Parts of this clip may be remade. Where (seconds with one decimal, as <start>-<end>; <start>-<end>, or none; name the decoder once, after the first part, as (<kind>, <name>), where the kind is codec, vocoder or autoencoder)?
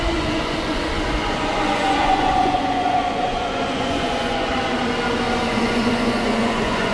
0.0-4.5 (vocoder, Vocos); 5.5-6.9